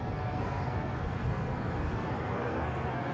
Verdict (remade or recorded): remade